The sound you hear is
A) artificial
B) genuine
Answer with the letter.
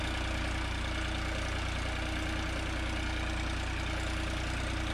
B